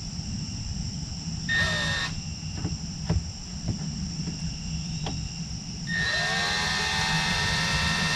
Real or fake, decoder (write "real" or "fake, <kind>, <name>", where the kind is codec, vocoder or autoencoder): fake, vocoder, BigVGAN v2